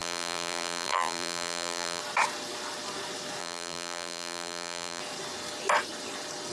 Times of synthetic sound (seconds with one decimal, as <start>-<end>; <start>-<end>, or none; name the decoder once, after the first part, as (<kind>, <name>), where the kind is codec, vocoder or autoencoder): 0.0-2.0 (vocoder, BigVGAN v2); 3.4-5.0